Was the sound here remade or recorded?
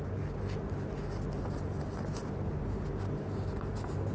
recorded